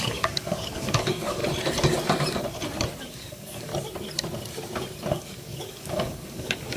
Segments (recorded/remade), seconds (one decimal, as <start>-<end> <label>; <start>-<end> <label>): 0.0-1.4 remade; 1.4-3.0 recorded; 3.0-3.7 remade; 3.7-5.1 recorded; 5.1-6.8 remade